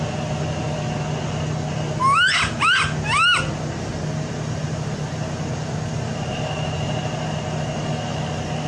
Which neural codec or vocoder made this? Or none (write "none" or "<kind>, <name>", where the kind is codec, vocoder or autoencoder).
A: none